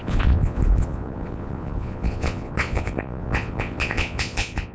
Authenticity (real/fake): fake